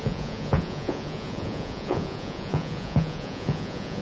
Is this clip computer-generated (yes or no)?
yes